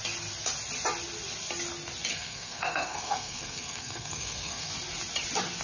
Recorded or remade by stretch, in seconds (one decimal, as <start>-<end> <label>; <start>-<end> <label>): 0.0-2.1 recorded; 2.1-4.7 remade; 4.7-5.6 recorded